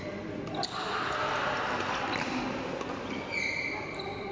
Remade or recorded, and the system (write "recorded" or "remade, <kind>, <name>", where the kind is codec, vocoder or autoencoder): remade, vocoder, BigVGAN v2